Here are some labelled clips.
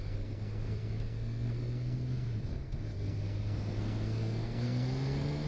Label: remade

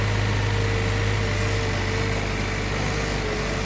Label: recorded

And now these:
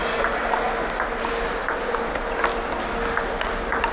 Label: recorded